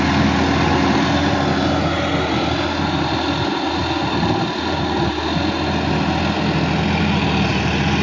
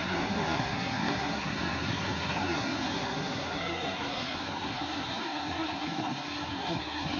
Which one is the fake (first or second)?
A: second